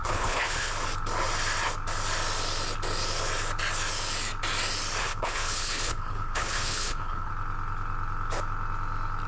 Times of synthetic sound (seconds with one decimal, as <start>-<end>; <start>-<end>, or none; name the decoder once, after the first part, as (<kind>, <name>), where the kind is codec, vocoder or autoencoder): 0.0-0.7 (codec, HILCodec); 5.0-7.3